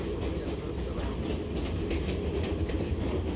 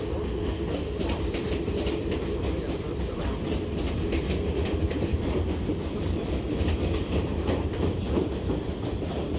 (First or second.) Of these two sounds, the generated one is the second